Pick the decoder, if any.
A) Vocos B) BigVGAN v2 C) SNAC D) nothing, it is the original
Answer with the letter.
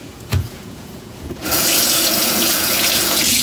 A